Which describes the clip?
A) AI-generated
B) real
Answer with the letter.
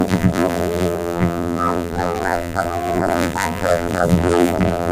A